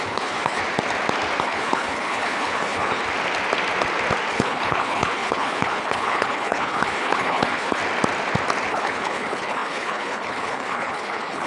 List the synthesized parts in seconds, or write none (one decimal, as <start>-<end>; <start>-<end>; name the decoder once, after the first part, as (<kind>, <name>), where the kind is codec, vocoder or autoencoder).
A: 0.0-0.6 (codec, HILCodec); 1.4-3.0; 4.3-7.8; 8.7-11.5